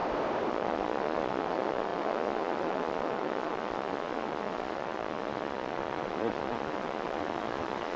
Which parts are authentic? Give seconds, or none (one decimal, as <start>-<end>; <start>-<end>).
0.0-0.5